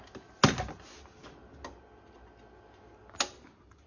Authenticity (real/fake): real